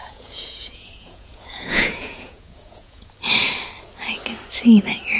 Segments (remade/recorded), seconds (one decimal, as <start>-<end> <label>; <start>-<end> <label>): 0.0-3.1 remade; 3.1-5.2 recorded